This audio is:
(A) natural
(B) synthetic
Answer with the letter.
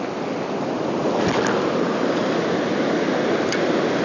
A